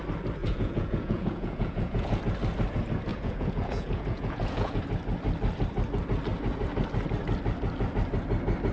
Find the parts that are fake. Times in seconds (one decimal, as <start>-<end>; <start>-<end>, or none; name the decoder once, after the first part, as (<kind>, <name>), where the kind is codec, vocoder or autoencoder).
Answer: 0.4-2.2 (vocoder, Vocos); 3.1-4.8